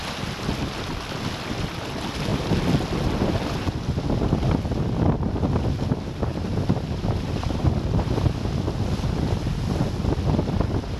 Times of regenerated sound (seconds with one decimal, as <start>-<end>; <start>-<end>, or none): none